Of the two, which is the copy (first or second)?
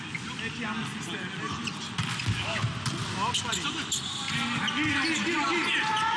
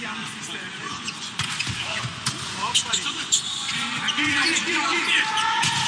second